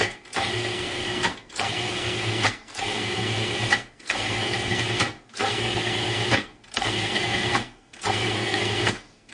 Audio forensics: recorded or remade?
remade